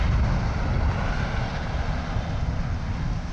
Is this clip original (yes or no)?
yes